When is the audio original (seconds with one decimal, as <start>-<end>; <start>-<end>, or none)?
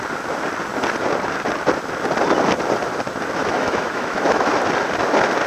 0.0-3.4; 4.5-5.5